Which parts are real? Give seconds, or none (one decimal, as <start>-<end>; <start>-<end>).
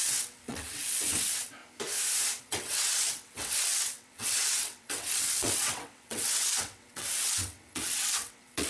1.6-2.4